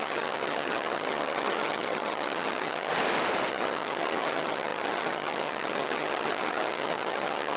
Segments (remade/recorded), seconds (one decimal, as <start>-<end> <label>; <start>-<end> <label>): 0.0-2.9 remade; 2.9-3.5 recorded; 3.5-7.6 remade